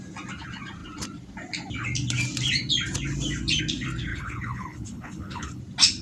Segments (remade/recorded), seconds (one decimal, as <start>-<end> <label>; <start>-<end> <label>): 0.0-4.1 recorded; 4.1-5.6 remade; 5.6-6.0 recorded